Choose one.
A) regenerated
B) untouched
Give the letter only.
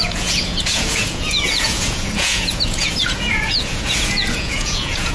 A